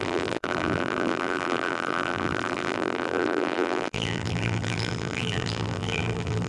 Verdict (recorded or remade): remade